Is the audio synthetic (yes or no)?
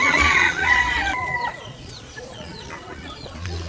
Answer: yes